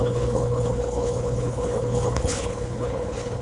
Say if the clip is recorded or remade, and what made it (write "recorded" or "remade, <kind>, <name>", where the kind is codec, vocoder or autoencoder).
remade, codec, HILCodec